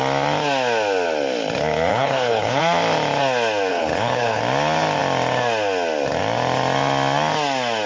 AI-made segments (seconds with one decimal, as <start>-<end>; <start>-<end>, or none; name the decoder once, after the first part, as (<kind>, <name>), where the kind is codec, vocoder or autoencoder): 1.9-2.6 (codec, HILCodec); 3.7-4.4